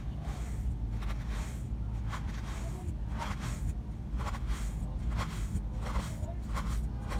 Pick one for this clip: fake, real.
real